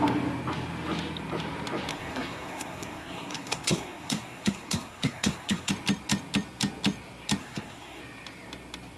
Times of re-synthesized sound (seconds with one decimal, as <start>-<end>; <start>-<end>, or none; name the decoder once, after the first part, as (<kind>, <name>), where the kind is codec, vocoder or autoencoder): 1.9-5.7 (codec, SNAC); 7.4-8.0